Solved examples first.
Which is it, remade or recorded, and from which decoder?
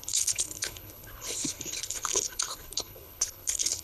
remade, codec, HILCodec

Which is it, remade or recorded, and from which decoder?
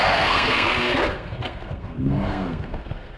remade, codec, SNAC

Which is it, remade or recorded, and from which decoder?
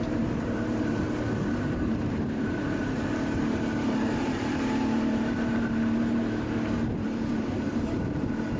remade, vocoder, BigVGAN v2